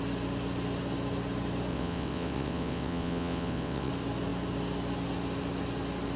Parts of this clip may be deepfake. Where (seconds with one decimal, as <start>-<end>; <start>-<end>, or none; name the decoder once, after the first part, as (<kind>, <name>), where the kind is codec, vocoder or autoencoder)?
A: 1.7-3.9 (vocoder, WaveNeXt)